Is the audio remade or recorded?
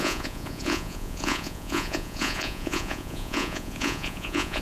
remade